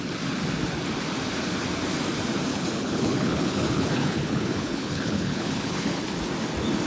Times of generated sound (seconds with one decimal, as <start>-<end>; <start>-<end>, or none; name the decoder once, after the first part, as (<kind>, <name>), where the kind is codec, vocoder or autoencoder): 2.5-6.0 (codec, HILCodec)